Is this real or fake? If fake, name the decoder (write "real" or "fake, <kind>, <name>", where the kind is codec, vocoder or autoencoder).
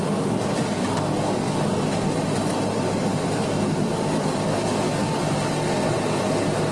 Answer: real